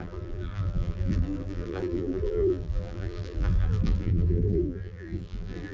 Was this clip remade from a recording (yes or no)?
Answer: yes